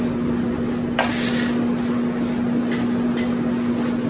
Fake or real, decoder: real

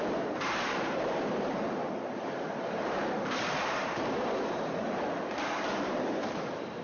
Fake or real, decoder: fake, vocoder, BigVGAN v2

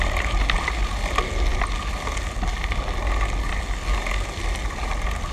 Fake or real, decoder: real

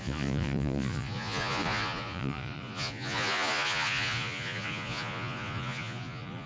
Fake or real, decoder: fake, vocoder, Vocos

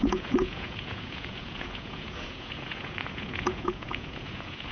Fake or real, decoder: fake, vocoder, Vocos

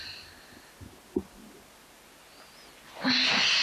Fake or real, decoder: real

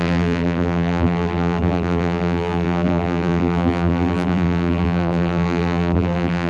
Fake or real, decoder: fake, vocoder, BigVGAN v2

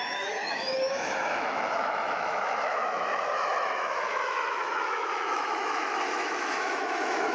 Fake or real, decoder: fake, autoencoder, DAC-VAE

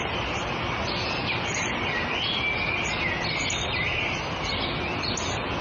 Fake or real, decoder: real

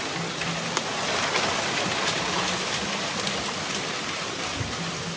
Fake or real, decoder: real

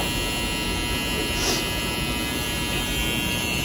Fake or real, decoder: real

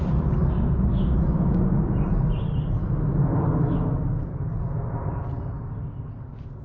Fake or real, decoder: real